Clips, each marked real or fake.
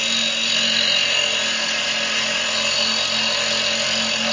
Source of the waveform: real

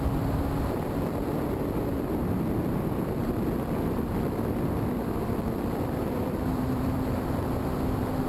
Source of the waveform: fake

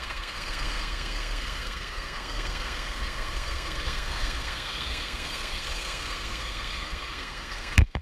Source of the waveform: fake